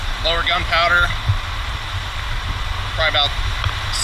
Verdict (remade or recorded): recorded